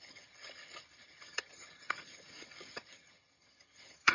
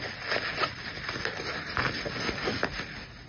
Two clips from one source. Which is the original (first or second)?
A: second